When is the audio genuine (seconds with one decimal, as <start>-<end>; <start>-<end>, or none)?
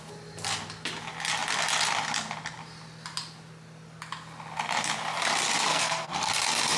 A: 0.0-5.7; 6.3-6.8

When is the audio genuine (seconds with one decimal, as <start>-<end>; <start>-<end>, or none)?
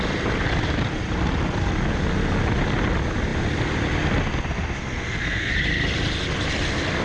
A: 0.0-4.8; 5.5-7.0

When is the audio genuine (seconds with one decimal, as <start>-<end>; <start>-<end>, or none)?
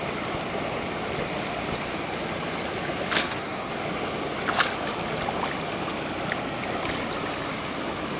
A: 0.0-3.2; 3.7-8.2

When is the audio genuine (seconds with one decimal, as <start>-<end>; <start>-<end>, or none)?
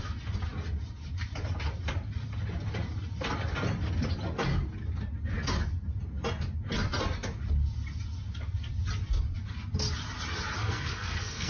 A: 0.0-10.6